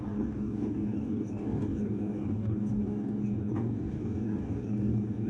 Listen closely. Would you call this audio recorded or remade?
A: remade